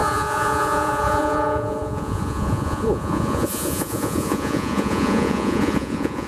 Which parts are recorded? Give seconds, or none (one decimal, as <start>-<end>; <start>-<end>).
none